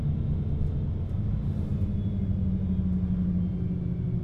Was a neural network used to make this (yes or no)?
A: no